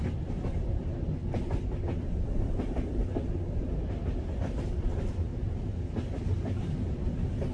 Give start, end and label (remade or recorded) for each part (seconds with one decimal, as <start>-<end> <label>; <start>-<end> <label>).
0.0-5.3 remade; 5.3-6.2 recorded; 6.2-7.5 remade